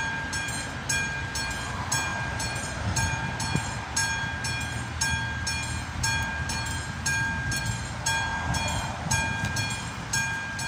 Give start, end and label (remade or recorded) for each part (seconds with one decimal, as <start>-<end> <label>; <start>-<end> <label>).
0.0-2.1 recorded; 2.1-3.3 remade; 3.3-10.7 recorded